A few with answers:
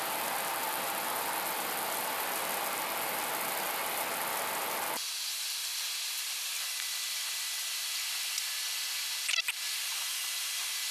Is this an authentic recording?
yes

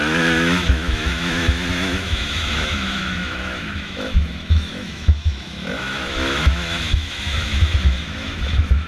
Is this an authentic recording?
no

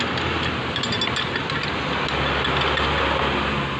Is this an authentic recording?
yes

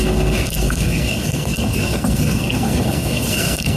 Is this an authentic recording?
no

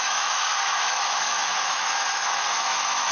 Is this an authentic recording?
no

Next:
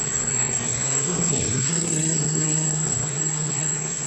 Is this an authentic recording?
no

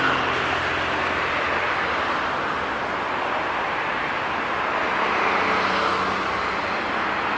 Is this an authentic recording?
yes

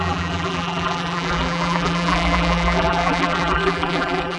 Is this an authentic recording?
no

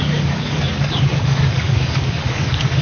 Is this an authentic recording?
no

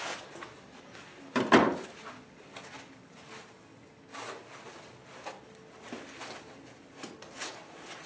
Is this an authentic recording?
yes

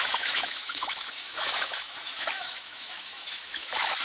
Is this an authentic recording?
no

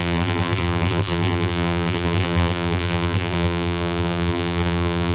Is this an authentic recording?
no